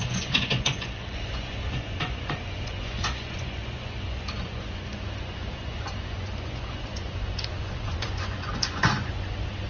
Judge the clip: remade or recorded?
remade